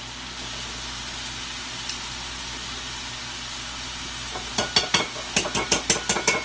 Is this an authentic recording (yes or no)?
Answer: yes